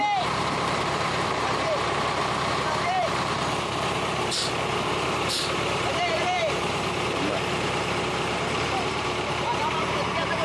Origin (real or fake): fake